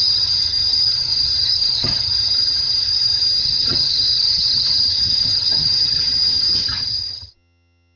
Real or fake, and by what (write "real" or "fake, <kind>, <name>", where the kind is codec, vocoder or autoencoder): fake, vocoder, HiFi-GAN